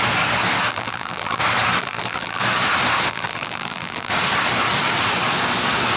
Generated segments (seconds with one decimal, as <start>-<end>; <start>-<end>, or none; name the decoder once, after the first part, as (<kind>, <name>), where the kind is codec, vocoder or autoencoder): 0.7-1.4 (vocoder, BigVGAN v2); 1.8-2.4; 3.1-4.1

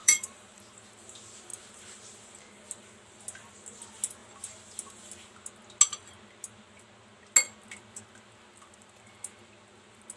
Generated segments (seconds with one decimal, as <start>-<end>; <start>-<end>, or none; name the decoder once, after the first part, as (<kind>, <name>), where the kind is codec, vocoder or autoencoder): 0.0-0.7 (vocoder, BigVGAN v2)

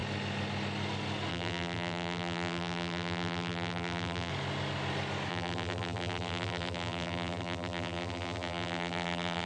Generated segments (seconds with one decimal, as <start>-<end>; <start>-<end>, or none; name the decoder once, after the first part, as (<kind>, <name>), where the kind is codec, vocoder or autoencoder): 1.3-4.3 (vocoder, BigVGAN v2); 5.3-9.5

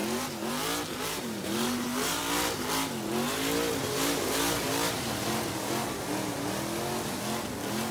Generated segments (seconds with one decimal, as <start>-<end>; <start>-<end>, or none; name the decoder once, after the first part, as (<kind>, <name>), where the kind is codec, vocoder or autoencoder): 0.9-2.2 (vocoder, BigVGAN v2)

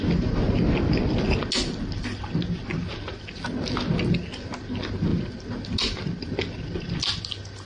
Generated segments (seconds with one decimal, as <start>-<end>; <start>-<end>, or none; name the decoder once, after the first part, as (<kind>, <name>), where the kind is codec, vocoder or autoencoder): none

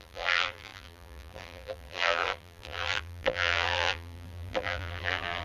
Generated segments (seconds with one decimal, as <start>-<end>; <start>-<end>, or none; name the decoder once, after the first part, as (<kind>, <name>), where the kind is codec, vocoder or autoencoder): 0.0-5.4 (vocoder, BigVGAN v2)

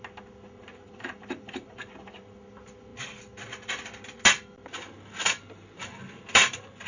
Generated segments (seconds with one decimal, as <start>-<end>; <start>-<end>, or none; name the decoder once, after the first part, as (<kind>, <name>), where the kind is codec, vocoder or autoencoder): 0.6-1.7 (vocoder, BigVGAN v2)

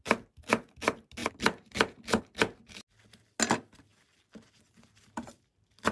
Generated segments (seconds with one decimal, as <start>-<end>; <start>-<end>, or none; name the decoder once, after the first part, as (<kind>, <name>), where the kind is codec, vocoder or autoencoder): 1.2-2.2 (vocoder, BigVGAN v2); 3.9-5.9